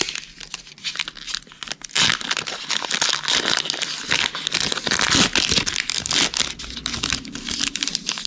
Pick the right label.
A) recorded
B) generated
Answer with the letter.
A